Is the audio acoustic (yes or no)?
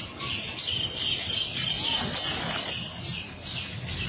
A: yes